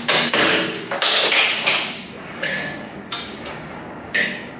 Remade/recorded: remade